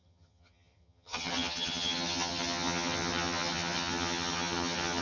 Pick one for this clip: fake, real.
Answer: fake